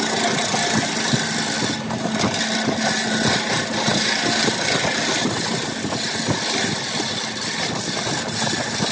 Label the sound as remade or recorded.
recorded